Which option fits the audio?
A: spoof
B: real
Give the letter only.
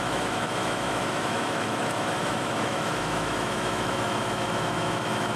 A